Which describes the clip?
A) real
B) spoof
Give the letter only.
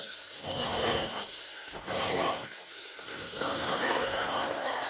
B